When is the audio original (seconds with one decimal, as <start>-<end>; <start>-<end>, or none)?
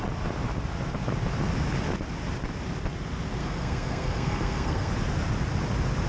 0.0-3.4; 4.9-6.1